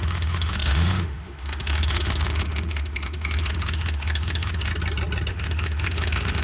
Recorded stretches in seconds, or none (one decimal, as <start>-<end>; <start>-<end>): 4.7-5.3